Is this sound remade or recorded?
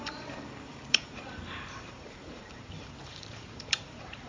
remade